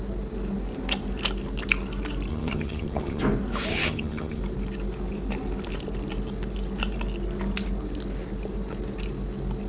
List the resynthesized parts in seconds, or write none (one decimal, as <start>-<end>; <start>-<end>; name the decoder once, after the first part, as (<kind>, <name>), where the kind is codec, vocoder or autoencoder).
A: 2.3-3.2 (vocoder, HiFi-GAN); 3.7-4.4

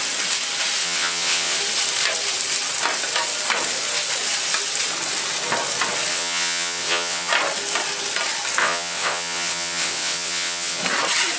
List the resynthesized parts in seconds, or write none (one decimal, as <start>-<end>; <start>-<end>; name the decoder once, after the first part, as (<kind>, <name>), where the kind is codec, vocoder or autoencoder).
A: 0.8-1.6 (vocoder, WaveNeXt); 6.1-7.3; 8.6-10.8